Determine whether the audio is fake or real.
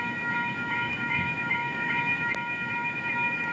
fake